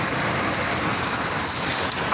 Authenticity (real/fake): real